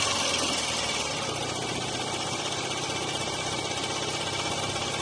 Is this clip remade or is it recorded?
recorded